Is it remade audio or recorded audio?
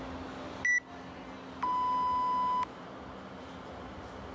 recorded